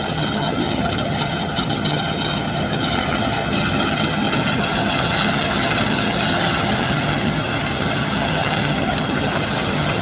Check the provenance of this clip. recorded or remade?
remade